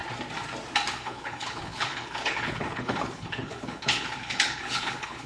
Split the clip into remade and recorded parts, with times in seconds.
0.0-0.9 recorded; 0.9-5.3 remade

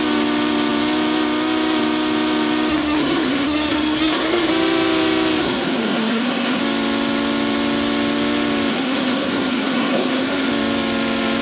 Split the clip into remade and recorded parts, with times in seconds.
0.0-2.7 recorded; 2.7-4.5 remade; 4.5-5.4 recorded; 5.4-6.6 remade; 6.6-8.7 recorded; 8.7-10.5 remade; 10.5-11.4 recorded

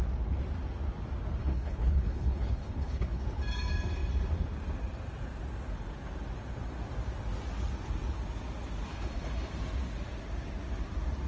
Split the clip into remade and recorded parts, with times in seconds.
0.0-1.4 recorded; 1.4-3.2 remade; 3.2-8.9 recorded; 8.9-9.5 remade; 9.5-11.3 recorded

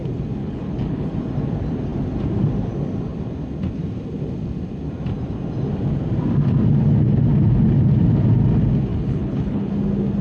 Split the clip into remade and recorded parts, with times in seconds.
0.0-0.4 recorded; 0.4-1.1 remade; 1.1-8.9 recorded; 8.9-9.7 remade; 9.7-10.2 recorded